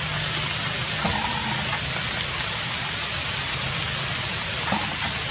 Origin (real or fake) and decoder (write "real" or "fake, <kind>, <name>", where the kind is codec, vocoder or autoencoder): real